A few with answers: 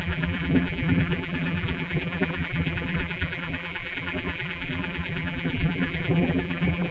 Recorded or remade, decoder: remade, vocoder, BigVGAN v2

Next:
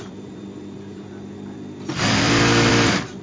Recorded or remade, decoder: remade, vocoder, BigVGAN v2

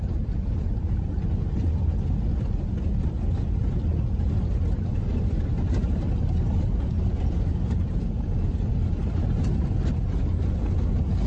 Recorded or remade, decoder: recorded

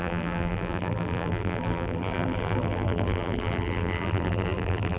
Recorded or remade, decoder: remade, vocoder, BigVGAN v2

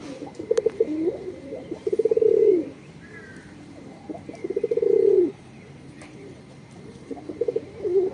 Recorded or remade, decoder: remade, vocoder, BigVGAN v2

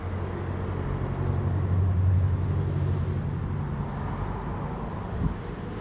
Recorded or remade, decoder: recorded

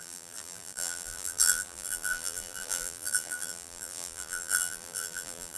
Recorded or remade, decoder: remade, vocoder, BigVGAN v2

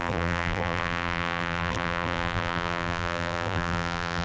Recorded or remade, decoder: remade, vocoder, BigVGAN v2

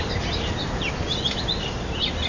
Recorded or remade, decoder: recorded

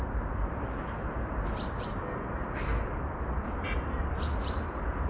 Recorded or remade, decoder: remade, vocoder, BigVGAN v2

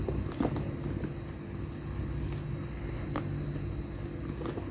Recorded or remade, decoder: recorded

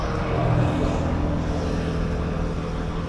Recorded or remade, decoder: recorded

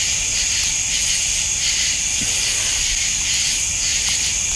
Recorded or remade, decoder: recorded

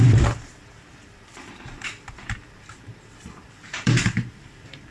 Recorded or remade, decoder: remade, vocoder, BigVGAN v2